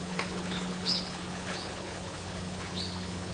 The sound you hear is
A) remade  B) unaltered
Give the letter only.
A